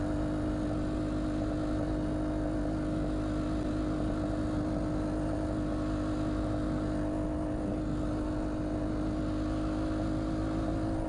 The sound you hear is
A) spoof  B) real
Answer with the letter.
B